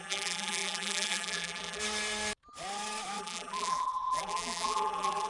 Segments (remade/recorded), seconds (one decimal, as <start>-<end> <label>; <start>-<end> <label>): 0.0-1.8 remade; 1.8-3.2 recorded; 3.2-5.3 remade